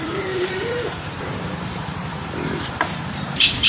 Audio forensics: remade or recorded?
remade